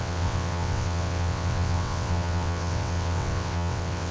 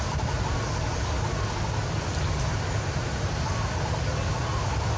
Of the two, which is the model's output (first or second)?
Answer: first